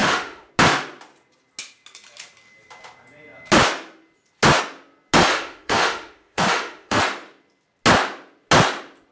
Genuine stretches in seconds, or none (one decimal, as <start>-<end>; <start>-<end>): 0.5-5.3; 7.0-9.1